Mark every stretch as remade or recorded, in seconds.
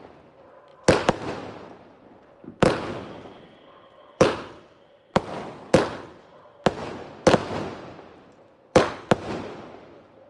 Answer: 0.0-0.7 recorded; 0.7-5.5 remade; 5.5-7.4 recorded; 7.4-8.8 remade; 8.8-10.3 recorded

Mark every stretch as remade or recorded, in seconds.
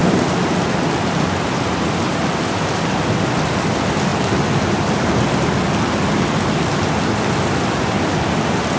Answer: 0.0-8.8 recorded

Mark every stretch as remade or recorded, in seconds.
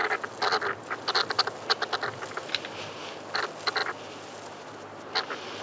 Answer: 0.0-5.6 recorded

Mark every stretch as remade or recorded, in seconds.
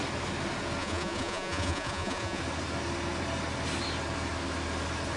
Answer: 0.0-0.8 recorded; 0.8-2.4 remade; 2.4-5.2 recorded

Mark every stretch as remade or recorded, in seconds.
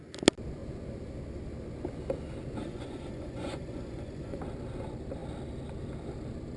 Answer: 0.0-2.6 recorded; 2.6-4.4 remade; 4.4-6.6 recorded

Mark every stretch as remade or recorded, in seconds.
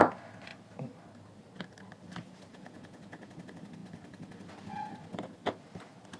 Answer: 0.0-2.5 recorded; 2.5-3.3 remade; 3.3-6.2 recorded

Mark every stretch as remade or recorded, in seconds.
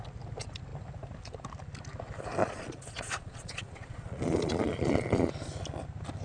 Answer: 0.0-2.4 recorded; 2.4-5.3 remade; 5.3-6.2 recorded